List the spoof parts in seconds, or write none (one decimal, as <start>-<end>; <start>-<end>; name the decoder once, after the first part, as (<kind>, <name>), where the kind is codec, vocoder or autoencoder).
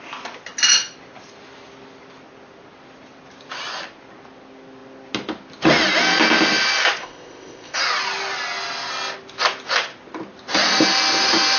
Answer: 7.0-7.8 (codec, ZipCodec)